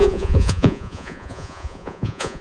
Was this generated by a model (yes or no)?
yes